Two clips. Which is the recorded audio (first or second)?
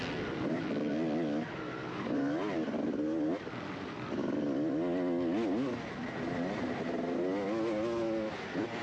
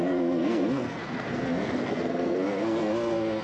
first